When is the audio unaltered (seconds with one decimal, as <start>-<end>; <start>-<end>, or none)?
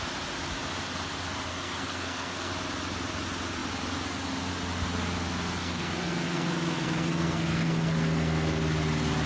0.0-1.5; 2.5-5.6; 8.6-9.3